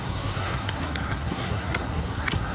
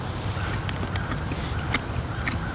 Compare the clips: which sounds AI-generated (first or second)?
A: first